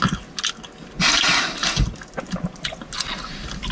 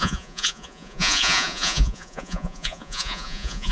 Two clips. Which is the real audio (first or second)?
first